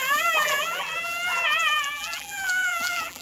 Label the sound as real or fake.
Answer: fake